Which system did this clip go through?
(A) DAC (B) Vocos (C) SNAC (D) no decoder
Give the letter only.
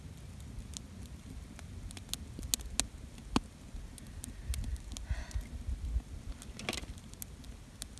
D